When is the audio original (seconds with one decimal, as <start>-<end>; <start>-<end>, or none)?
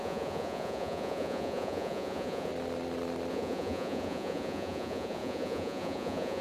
2.5-3.3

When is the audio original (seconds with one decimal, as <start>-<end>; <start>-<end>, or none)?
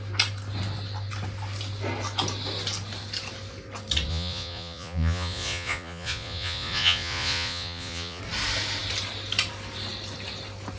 0.0-4.1; 8.2-10.8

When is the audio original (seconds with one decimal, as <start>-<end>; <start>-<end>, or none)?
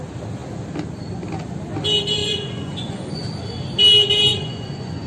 0.0-2.2; 3.3-4.3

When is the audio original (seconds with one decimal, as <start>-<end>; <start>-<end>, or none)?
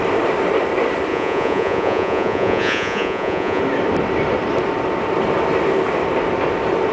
0.0-1.1; 3.6-6.9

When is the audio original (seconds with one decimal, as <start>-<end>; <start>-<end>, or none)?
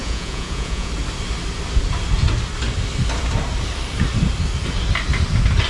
0.9-5.7